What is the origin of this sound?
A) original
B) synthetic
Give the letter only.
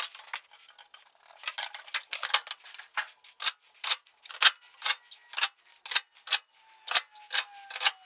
A